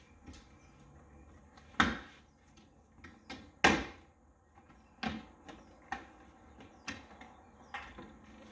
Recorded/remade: recorded